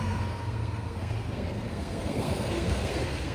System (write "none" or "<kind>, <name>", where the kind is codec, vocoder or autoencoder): codec, SNAC